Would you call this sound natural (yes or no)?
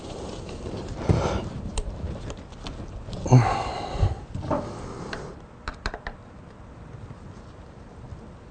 no